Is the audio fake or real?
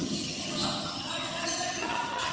fake